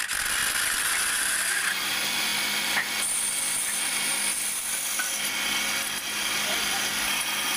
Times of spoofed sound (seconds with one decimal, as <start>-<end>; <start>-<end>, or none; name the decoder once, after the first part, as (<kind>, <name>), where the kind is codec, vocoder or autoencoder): none